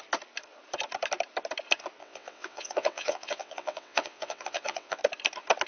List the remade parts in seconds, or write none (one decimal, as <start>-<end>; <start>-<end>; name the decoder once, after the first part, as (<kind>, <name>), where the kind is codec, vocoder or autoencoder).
2.0-5.0 (vocoder, WaveNeXt)